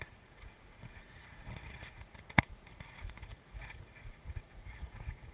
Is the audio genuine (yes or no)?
no